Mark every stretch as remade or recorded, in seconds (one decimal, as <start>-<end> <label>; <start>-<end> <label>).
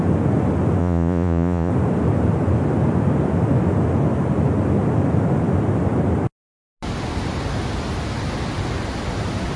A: 0.0-0.8 recorded; 0.8-1.7 remade; 1.7-9.6 recorded